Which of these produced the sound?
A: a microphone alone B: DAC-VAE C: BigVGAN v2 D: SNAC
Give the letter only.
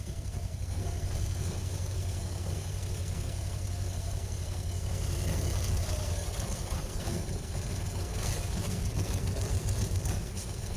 D